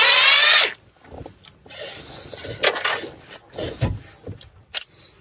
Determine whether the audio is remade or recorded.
recorded